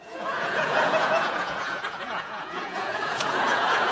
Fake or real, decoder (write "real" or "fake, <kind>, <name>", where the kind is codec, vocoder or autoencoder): fake, vocoder, Vocos